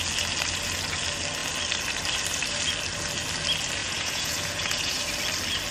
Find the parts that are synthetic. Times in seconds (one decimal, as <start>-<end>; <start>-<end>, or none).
3.8-5.0